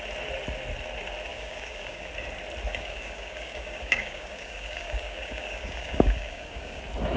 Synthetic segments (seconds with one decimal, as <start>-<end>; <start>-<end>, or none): 1.3-2.1; 2.7-6.8